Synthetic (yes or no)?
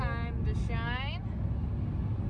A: no